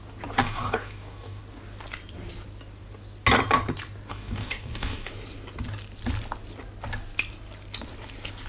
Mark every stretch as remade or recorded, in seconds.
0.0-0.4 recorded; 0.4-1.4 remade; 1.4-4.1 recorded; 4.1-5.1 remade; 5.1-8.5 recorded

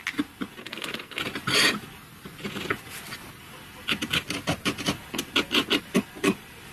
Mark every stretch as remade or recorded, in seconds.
0.0-0.6 recorded; 0.6-1.2 remade; 1.2-6.7 recorded

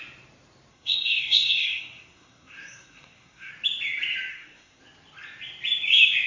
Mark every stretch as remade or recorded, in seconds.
0.0-0.7 recorded; 0.7-3.5 remade; 3.5-4.3 recorded; 4.3-4.8 remade; 4.8-6.3 recorded